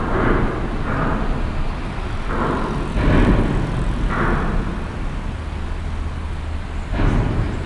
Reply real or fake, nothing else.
real